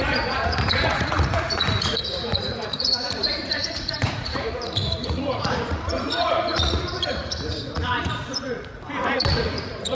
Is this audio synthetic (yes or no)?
yes